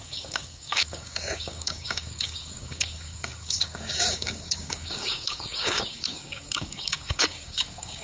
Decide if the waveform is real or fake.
fake